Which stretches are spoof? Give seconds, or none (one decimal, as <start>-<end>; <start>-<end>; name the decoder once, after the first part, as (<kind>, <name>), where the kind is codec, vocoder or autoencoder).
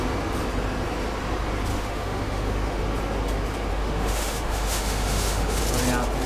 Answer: 1.7-2.8 (autoencoder, DAC-VAE); 3.7-5.6